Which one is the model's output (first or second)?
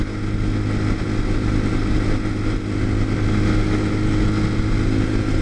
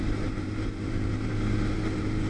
second